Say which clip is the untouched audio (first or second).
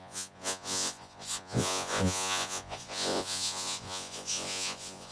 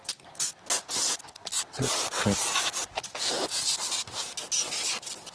second